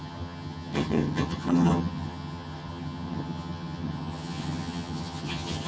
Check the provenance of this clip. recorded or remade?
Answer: remade